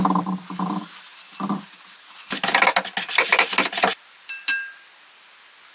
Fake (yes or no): no